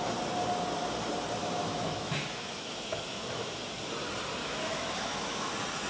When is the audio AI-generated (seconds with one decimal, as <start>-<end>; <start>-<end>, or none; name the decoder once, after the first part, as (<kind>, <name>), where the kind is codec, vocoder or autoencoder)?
1.4-3.6 (autoencoder, DAC-VAE); 4.4-5.5